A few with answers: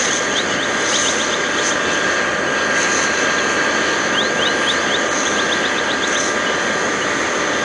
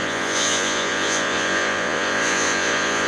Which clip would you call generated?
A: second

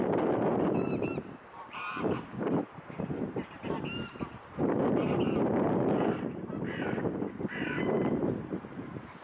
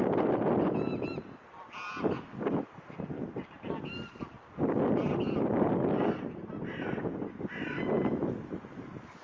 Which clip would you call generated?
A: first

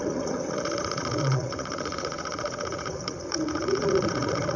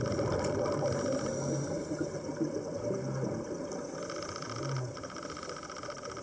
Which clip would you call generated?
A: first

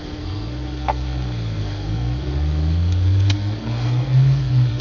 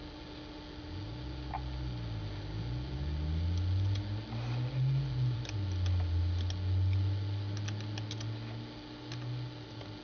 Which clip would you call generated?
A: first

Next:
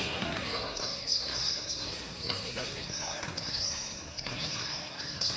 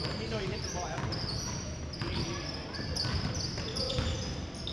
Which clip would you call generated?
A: first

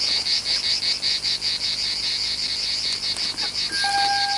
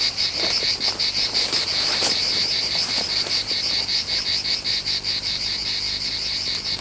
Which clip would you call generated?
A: second